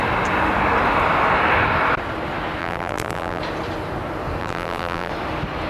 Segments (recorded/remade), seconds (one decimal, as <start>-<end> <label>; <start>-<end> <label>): 0.0-2.6 recorded; 2.6-3.4 remade; 3.4-4.4 recorded; 4.4-5.1 remade; 5.1-5.7 recorded